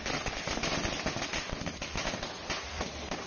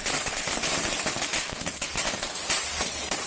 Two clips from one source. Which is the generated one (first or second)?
second